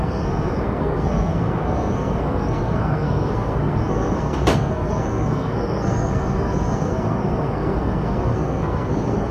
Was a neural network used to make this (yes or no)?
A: yes